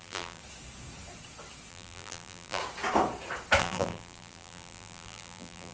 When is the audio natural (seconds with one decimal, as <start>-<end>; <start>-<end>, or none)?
0.4-1.7; 2.6-3.6